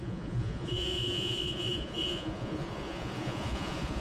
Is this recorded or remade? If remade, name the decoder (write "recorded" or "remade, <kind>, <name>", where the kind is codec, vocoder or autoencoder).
remade, vocoder, Vocos